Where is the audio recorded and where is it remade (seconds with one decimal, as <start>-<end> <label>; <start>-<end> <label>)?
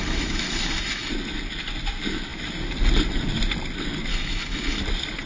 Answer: 0.0-1.1 remade; 1.1-4.1 recorded; 4.1-4.8 remade; 4.8-5.3 recorded